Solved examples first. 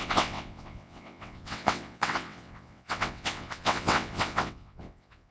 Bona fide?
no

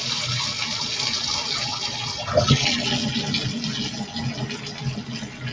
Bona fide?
yes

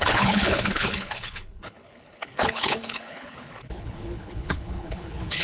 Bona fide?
no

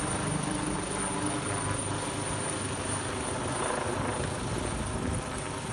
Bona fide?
yes